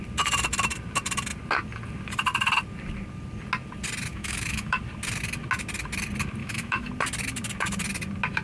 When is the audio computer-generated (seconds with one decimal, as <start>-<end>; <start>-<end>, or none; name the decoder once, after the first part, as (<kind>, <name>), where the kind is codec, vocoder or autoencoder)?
4.1-4.8 (autoencoder, DAC-VAE); 6.4-6.9